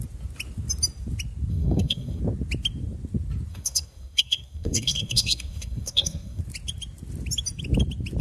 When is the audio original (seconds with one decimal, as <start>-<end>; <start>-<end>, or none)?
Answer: 0.0-1.5; 2.2-3.5; 6.4-8.2